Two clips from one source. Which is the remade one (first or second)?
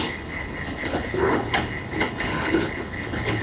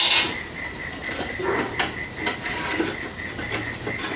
first